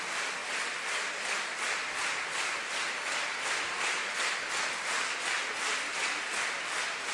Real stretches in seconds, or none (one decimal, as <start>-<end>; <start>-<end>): 0.0-7.1